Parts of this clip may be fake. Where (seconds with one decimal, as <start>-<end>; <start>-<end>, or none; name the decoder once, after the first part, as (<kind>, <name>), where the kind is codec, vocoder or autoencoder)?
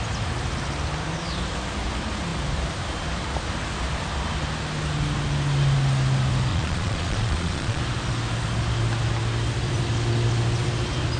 6.5-7.8 (vocoder, Vocos)